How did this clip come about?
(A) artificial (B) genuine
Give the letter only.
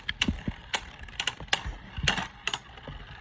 B